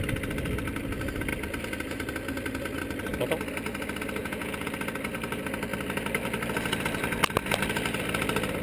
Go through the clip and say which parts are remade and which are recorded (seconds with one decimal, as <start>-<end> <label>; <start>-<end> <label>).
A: 0.0-4.2 recorded; 4.2-4.7 remade; 4.7-8.6 recorded